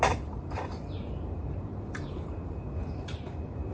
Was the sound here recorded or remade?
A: remade